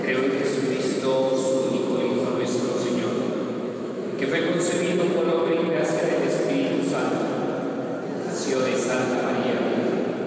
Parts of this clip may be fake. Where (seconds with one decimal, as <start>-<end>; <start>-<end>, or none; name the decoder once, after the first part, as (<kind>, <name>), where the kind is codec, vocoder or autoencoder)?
1.3-4.0 (autoencoder, DAC-VAE)